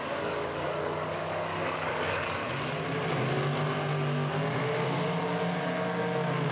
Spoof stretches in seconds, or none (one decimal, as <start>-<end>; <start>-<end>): 0.0-2.4